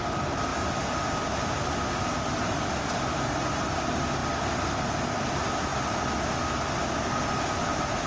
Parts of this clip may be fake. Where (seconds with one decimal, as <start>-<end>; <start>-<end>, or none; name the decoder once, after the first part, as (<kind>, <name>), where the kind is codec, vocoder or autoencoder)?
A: none